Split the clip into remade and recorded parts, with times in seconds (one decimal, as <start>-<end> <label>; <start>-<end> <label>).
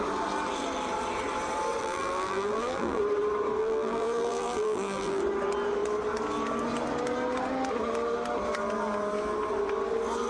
0.0-1.8 recorded; 1.8-3.0 remade; 3.0-3.6 recorded; 3.6-5.2 remade; 5.2-10.3 recorded